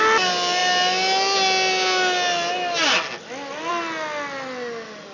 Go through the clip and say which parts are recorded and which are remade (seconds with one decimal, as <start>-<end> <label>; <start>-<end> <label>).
0.0-5.1 recorded

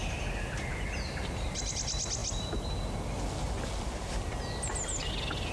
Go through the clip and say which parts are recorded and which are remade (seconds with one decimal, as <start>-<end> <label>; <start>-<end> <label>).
0.0-5.5 recorded

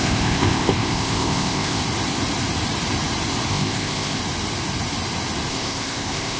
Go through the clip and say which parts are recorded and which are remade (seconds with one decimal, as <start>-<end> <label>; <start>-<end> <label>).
0.0-1.8 remade; 1.8-3.5 recorded; 3.5-4.2 remade; 4.2-5.5 recorded; 5.5-6.4 remade

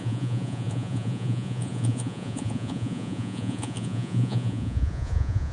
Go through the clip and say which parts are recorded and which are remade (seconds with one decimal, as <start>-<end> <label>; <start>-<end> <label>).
0.0-5.5 remade

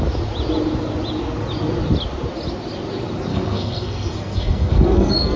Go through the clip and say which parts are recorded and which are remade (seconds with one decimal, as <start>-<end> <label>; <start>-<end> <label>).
0.0-3.3 recorded; 3.3-5.4 remade

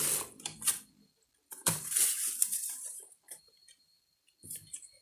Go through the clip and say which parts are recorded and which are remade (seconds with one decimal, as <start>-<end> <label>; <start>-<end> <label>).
0.0-1.6 recorded; 1.6-4.2 remade; 4.2-5.0 recorded